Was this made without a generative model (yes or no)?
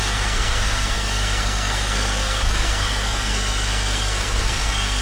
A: no